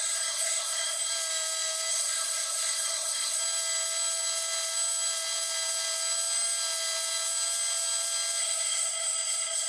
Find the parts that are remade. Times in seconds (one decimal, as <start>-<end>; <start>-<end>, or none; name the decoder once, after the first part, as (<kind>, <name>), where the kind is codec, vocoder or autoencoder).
0.0-1.1 (codec, SNAC); 1.9-3.4; 8.4-9.7